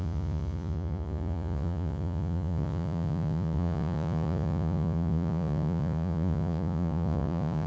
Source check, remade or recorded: remade